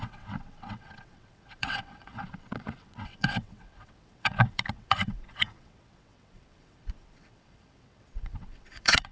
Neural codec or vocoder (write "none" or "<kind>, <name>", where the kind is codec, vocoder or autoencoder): vocoder, WaveNeXt